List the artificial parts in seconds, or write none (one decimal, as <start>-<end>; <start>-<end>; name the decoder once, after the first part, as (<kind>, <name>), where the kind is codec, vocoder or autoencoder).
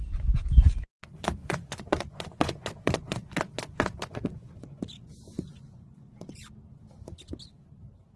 1.4-6.3 (vocoder, Vocos)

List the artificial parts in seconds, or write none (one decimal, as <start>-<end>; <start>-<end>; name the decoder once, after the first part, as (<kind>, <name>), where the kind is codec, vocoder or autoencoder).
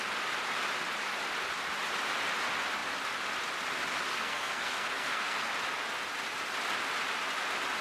4.1-5.5 (codec, SNAC)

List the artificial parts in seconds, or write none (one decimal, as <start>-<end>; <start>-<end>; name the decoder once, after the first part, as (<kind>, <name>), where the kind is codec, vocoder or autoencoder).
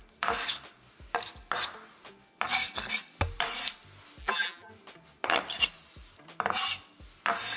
4.2-4.7 (vocoder, BigVGAN v2)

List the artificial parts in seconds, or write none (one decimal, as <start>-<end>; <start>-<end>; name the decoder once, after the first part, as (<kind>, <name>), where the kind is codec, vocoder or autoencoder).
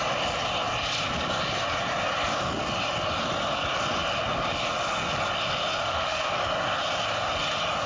5.8-6.3 (autoencoder, DAC-VAE)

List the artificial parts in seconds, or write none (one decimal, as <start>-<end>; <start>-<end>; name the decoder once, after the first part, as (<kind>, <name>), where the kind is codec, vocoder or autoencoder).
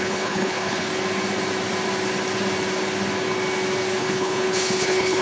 0.0-0.9 (codec, HILCodec); 4.0-5.2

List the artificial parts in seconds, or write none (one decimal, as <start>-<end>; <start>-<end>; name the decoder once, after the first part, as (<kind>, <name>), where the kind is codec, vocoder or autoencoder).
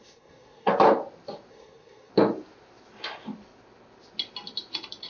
0.0-0.7 (codec, SNAC); 1.5-2.1